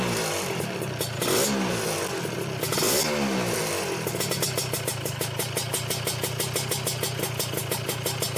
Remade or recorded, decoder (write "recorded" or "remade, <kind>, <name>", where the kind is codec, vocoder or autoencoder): recorded